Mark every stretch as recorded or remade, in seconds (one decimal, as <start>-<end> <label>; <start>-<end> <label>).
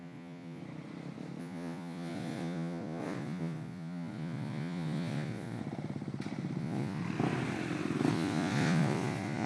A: 0.0-0.6 remade; 0.6-1.4 recorded; 1.4-5.6 remade; 5.6-6.6 recorded; 6.6-7.0 remade; 7.0-8.1 recorded; 8.1-9.5 remade